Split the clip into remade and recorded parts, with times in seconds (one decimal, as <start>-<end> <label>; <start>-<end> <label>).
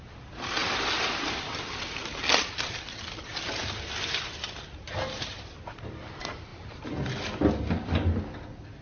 0.0-8.8 recorded